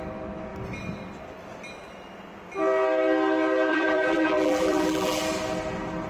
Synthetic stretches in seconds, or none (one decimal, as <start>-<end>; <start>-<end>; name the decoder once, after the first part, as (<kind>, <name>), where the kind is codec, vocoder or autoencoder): 3.7-5.2 (vocoder, BigVGAN v2)